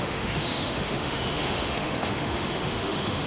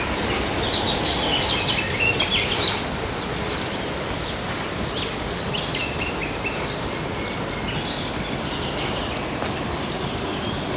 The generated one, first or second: first